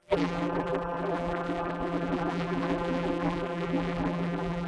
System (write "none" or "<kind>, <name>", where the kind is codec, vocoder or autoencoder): vocoder, BigVGAN v2